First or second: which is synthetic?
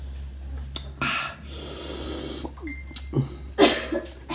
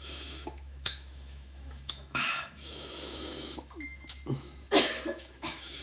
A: second